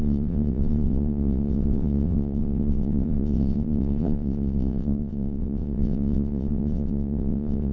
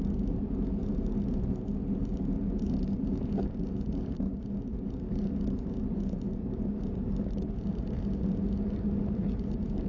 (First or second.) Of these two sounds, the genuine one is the second